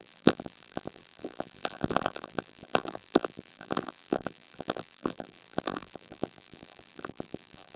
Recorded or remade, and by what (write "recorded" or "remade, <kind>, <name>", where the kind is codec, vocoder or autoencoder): remade, vocoder, BigVGAN v2